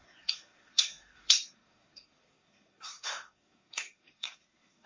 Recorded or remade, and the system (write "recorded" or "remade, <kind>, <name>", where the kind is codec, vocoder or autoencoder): remade, codec, SNAC